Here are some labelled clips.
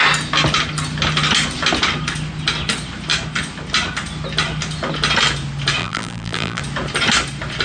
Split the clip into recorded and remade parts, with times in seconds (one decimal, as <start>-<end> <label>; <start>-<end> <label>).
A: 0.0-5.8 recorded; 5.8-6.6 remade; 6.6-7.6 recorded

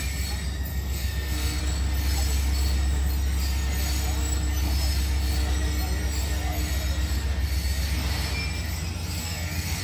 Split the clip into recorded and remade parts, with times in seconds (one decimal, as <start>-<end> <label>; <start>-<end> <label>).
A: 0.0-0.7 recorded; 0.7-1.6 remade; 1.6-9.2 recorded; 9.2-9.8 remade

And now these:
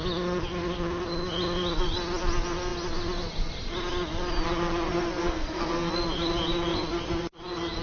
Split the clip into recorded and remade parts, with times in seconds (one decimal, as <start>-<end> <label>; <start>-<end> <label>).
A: 0.0-5.2 recorded; 5.2-5.9 remade; 5.9-7.8 recorded

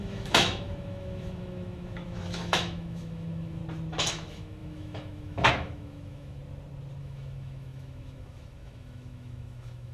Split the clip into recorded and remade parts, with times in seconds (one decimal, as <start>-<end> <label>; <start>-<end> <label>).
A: 0.0-3.6 remade; 3.6-4.1 recorded; 4.1-6.4 remade; 6.4-7.0 recorded; 7.0-9.9 remade

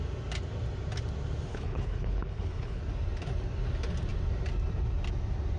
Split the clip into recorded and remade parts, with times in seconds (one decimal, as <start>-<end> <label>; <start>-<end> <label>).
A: 0.0-1.5 recorded; 1.5-2.8 remade; 2.8-5.6 recorded